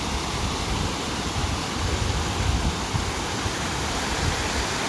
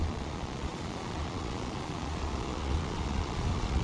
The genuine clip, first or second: first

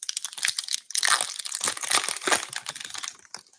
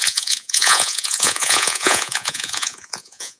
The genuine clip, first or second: first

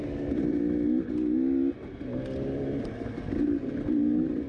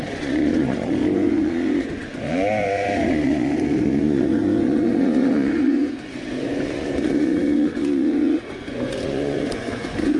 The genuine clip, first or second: first